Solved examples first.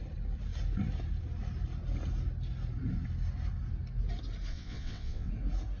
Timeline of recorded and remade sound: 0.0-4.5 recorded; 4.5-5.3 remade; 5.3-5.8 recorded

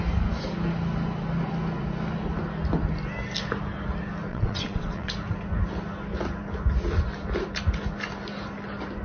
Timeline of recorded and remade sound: 0.0-4.3 recorded; 4.3-5.1 remade; 5.1-9.0 recorded

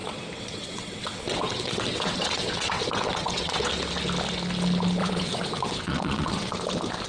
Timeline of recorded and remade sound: 0.0-3.7 remade; 3.7-5.0 recorded; 5.0-6.5 remade; 6.5-7.1 recorded

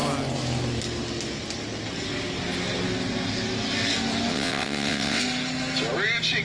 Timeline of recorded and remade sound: 0.0-4.3 recorded; 4.3-5.2 remade; 5.2-6.4 recorded

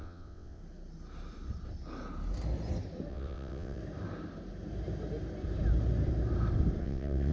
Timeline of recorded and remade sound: 0.0-0.6 remade; 0.6-3.1 recorded; 3.1-3.8 remade; 3.8-6.8 recorded; 6.8-7.3 remade

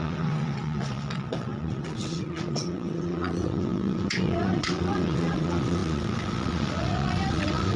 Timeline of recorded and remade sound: 0.0-7.8 remade

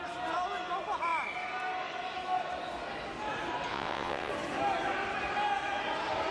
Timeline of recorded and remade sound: 0.0-3.7 recorded; 3.7-4.3 remade; 4.3-6.3 recorded

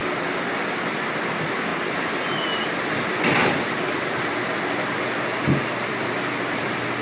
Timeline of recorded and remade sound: 0.0-7.0 recorded